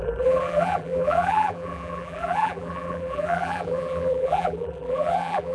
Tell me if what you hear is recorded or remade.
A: remade